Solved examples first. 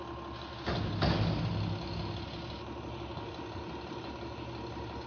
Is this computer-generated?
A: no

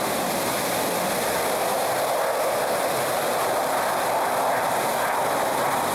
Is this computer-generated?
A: no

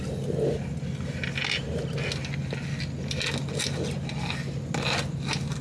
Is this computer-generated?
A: no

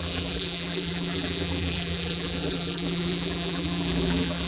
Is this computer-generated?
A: yes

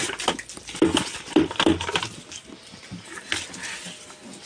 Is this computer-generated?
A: no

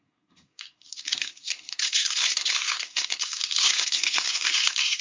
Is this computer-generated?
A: yes